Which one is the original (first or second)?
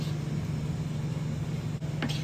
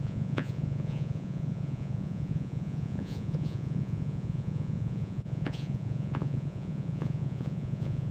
first